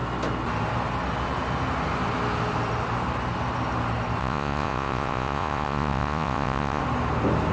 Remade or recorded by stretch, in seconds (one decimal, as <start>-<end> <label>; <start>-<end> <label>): 0.0-4.2 recorded; 4.2-6.8 remade; 6.8-7.5 recorded